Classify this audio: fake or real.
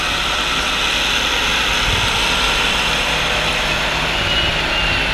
real